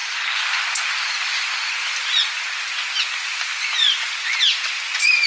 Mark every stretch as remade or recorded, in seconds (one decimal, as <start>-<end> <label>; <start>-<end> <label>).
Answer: 0.0-5.3 recorded